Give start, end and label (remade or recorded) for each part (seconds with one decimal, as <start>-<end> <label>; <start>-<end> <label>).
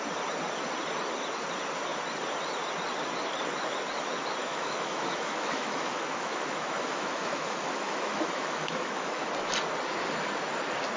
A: 0.0-4.4 recorded; 4.4-9.3 remade; 9.3-11.0 recorded